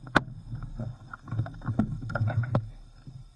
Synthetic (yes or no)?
yes